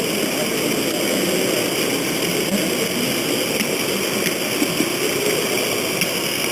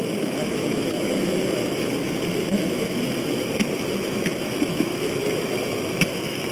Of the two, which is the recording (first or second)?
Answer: first